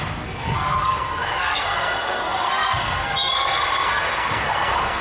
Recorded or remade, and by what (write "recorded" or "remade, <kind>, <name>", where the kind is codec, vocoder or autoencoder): remade, codec, SNAC